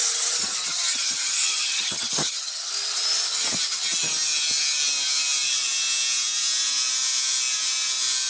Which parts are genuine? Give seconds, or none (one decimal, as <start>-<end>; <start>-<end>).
2.7-8.3